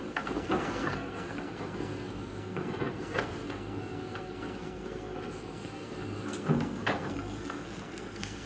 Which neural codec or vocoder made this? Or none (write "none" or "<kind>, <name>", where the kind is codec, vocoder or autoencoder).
codec, SNAC